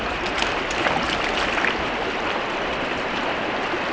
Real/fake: real